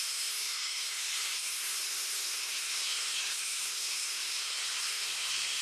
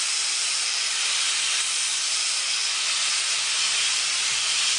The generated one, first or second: first